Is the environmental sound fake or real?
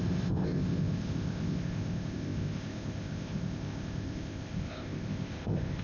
fake